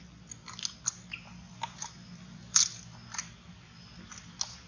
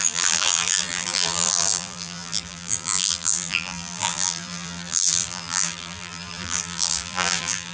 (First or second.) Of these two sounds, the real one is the first